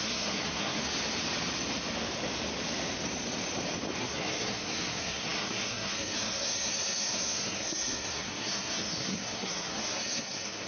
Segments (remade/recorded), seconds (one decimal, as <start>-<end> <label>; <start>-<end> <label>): 0.0-0.8 remade; 0.8-4.0 recorded; 4.0-10.7 remade

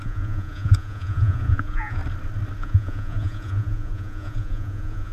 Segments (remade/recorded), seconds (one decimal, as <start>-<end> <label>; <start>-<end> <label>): 0.0-2.0 remade; 2.0-2.6 recorded; 2.6-5.1 remade